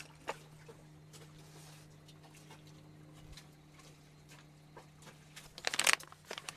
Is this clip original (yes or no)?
yes